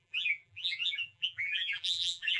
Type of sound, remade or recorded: remade